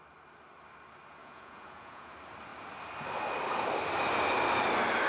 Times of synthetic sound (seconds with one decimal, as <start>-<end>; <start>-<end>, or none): 1.2-2.1